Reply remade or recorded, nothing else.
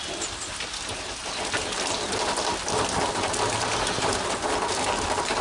recorded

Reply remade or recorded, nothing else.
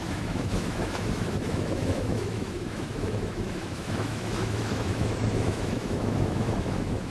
remade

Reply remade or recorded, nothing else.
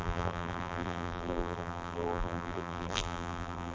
remade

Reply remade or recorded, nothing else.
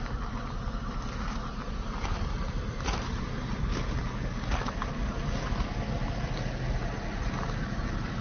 recorded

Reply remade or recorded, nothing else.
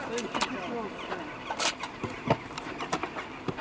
recorded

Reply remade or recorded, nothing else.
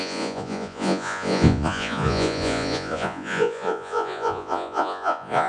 remade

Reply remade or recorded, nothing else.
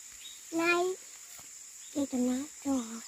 recorded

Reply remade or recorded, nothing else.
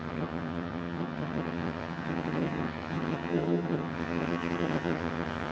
remade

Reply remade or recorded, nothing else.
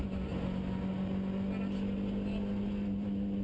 recorded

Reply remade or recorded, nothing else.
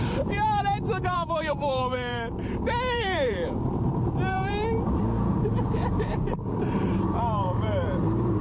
remade